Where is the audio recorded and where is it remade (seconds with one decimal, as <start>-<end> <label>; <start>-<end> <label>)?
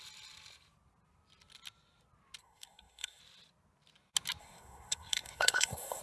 0.0-2.4 recorded; 2.4-3.2 remade; 3.2-4.4 recorded; 4.4-6.0 remade